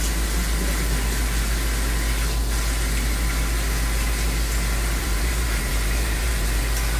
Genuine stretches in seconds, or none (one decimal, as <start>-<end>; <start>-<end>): 0.0-5.0; 6.6-7.0